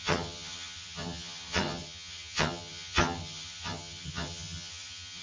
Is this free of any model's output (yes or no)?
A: no